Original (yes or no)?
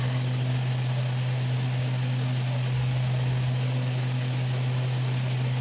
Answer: yes